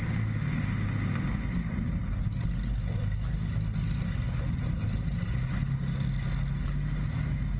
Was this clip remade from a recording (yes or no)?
no